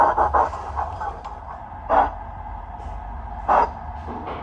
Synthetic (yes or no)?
no